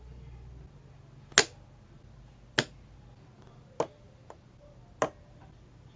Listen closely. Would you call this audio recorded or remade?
recorded